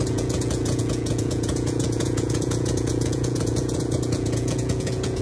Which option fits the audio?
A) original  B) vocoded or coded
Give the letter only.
B